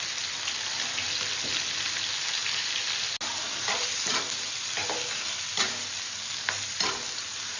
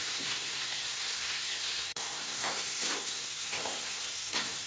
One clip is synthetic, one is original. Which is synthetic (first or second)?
second